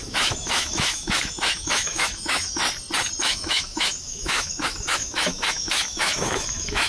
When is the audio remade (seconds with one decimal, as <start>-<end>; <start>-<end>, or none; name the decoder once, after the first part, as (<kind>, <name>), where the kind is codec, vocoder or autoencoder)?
0.0-2.6 (autoencoder, DAC-VAE); 3.2-6.9